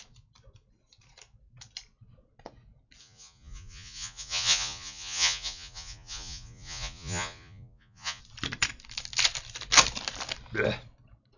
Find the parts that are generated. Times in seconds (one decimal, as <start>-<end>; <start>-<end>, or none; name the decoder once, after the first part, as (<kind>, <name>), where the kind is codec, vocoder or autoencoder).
3.0-8.2 (vocoder, Vocos)